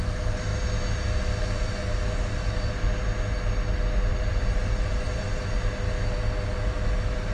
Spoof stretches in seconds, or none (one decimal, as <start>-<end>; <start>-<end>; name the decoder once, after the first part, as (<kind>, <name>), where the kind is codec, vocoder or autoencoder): 4.1-5.5 (vocoder, BigVGAN v2)